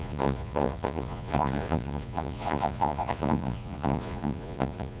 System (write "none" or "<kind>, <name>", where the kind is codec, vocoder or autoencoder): vocoder, Vocos